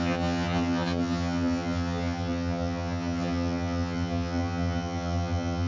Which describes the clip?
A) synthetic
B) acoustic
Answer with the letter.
A